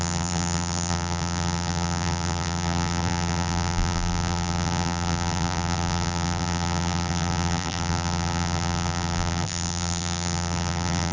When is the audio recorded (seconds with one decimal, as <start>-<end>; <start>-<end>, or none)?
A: none